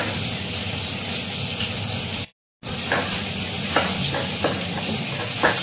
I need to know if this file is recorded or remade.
recorded